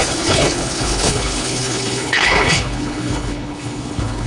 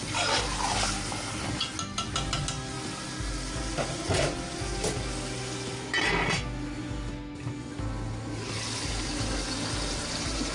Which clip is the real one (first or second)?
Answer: second